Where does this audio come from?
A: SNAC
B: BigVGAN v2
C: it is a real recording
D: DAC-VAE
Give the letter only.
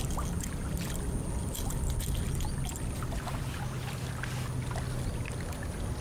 C